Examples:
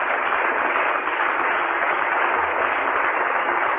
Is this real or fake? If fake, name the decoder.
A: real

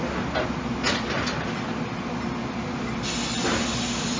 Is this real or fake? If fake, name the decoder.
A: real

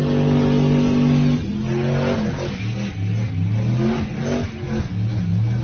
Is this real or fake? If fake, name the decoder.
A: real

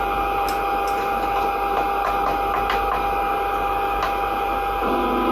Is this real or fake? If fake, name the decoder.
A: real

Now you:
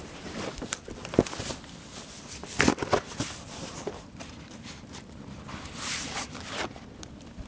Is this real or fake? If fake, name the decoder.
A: fake, vocoder, BigVGAN v2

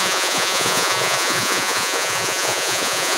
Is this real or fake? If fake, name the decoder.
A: fake, vocoder, Vocos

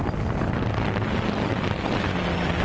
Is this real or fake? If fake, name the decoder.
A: real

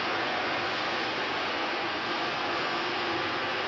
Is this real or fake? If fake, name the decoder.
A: fake, vocoder, Vocos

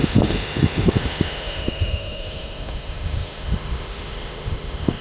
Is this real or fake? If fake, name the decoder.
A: fake, autoencoder, DAC-VAE